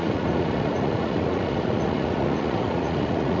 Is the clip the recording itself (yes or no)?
no